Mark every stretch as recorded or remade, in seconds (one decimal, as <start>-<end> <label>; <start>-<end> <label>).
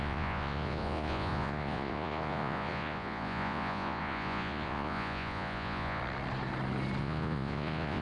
0.0-6.0 remade; 6.0-7.0 recorded; 7.0-8.0 remade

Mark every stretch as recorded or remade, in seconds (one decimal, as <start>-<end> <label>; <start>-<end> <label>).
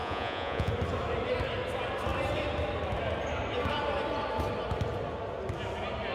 0.0-0.7 remade; 0.7-6.1 recorded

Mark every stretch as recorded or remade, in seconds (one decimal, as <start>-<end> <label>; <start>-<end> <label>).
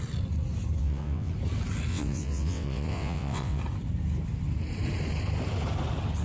0.0-0.8 recorded; 0.8-1.3 remade; 1.3-1.9 recorded; 1.9-3.6 remade; 3.6-6.2 recorded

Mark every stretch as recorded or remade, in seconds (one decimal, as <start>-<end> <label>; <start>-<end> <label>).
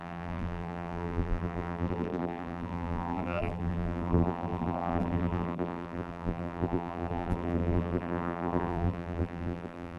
0.0-10.0 remade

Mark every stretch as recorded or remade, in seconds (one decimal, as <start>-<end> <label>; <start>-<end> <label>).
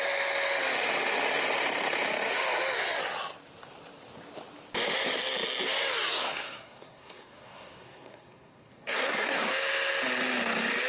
0.0-6.2 recorded; 6.2-9.5 remade; 9.5-10.9 recorded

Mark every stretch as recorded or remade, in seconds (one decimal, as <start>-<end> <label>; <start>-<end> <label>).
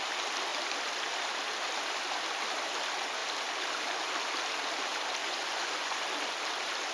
0.0-5.2 recorded; 5.2-6.0 remade; 6.0-6.9 recorded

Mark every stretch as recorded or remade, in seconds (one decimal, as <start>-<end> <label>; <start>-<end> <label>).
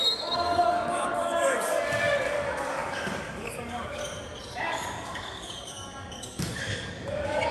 0.0-4.0 remade; 4.0-4.6 recorded; 4.6-7.5 remade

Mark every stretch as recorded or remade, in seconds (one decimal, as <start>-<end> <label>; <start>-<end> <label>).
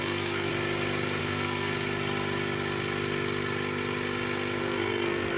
0.0-0.5 remade; 0.5-1.2 recorded; 1.2-1.7 remade; 1.7-4.6 recorded; 4.6-5.4 remade